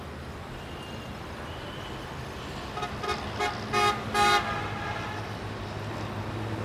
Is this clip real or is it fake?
real